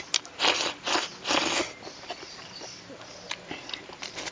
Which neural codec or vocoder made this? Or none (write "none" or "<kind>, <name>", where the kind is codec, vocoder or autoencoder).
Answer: none